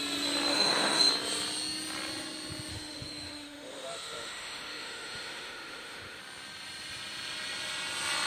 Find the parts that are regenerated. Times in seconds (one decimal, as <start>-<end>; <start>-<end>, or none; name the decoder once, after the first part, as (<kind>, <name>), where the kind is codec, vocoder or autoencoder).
0.5-1.1 (autoencoder, DAC-VAE); 2.7-6.2